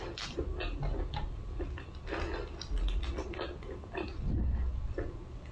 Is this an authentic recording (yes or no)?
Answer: yes